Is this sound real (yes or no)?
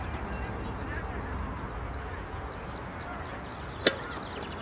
yes